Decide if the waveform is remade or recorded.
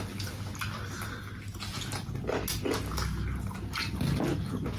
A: recorded